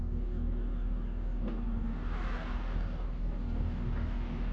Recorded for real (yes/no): no